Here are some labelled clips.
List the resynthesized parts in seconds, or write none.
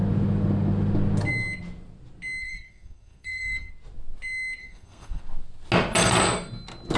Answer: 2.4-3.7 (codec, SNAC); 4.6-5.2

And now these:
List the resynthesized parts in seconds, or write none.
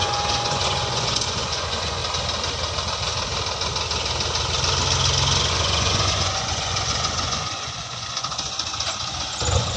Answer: 0.0-2.0 (vocoder, Vocos); 5.5-9.8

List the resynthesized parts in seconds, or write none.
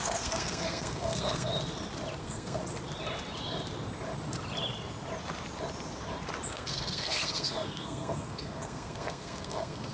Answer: 0.0-1.5 (codec, SNAC); 2.2-2.6; 6.5-9.9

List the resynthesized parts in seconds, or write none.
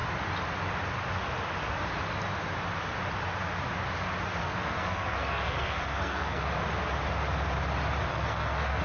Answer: 4.4-6.5 (codec, SNAC); 8.1-8.8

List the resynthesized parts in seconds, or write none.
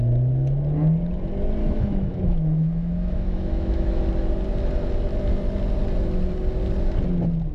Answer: 1.6-4.0 (autoencoder, DAC-VAE)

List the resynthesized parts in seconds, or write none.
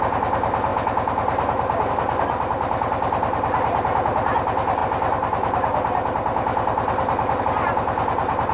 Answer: none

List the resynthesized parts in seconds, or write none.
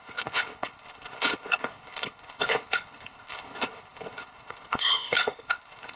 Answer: 0.0-6.0 (codec, HILCodec)